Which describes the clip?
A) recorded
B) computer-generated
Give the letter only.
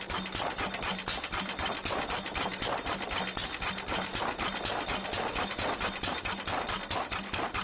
A